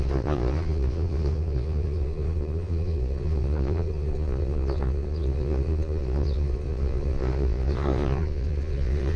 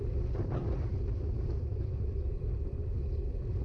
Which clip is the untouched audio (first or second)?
second